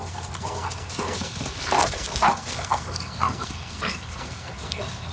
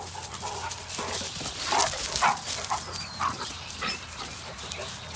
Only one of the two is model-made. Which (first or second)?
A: first